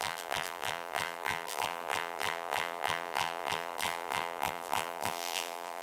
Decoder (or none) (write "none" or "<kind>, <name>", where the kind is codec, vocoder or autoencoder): vocoder, BigVGAN v2